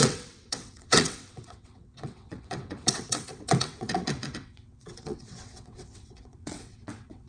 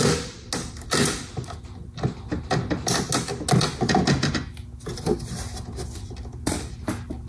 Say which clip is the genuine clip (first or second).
second